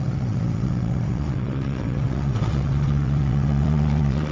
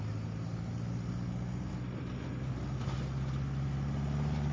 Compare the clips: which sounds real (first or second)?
second